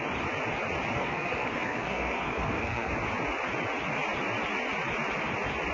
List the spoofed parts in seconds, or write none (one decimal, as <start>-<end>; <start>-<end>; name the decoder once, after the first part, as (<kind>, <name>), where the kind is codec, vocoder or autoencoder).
0.9-2.9 (codec, SNAC)